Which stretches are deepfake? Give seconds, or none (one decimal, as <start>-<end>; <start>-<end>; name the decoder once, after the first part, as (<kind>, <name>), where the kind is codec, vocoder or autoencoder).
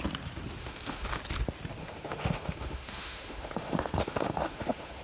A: 0.6-1.2 (autoencoder, DAC-VAE); 1.8-5.0